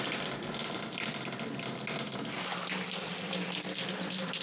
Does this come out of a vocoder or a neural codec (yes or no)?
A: no